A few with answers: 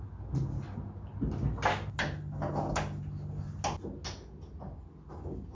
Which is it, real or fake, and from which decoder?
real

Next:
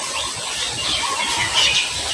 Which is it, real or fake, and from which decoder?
real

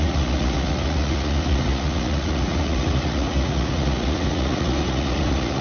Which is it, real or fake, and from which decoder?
fake, vocoder, Vocos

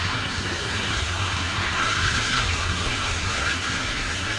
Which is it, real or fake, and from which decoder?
fake, codec, SNAC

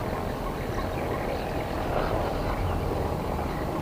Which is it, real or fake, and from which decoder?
real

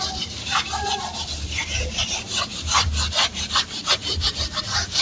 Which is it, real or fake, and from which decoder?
fake, vocoder, BigVGAN v2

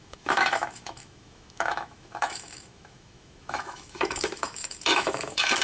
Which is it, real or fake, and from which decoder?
fake, autoencoder, DAC-VAE